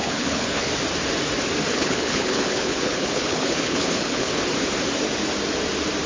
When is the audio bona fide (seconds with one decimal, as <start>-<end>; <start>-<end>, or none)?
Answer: 0.7-1.7; 4.4-6.1